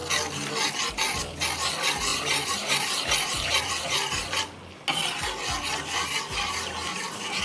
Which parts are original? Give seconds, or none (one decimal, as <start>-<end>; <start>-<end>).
0.0-2.1; 3.7-6.8